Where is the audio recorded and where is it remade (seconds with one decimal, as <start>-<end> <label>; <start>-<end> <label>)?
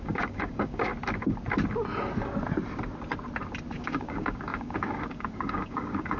0.0-0.9 remade; 0.9-3.7 recorded; 3.7-6.2 remade